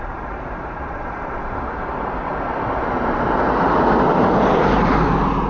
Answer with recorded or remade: remade